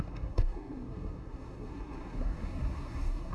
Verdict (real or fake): fake